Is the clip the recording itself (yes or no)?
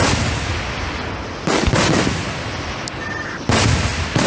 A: yes